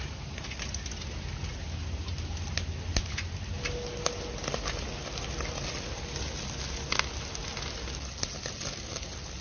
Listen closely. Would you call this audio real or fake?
real